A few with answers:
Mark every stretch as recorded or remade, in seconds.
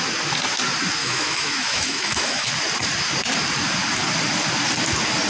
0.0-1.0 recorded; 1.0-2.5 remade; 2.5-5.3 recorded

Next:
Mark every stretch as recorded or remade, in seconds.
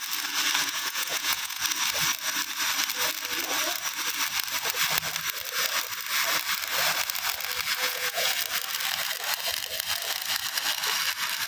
0.0-0.6 recorded; 0.6-1.6 remade; 1.6-7.8 recorded; 7.8-8.3 remade; 8.3-11.5 recorded